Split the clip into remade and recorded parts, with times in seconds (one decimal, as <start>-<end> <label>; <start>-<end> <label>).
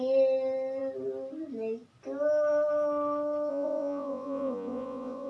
0.0-3.5 recorded; 3.5-5.3 remade